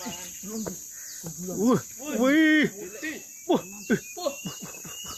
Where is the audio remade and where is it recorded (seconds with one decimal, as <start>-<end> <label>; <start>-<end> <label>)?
0.0-5.2 recorded